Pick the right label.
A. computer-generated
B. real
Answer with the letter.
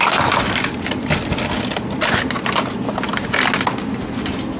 B